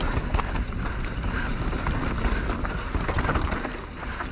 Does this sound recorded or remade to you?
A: recorded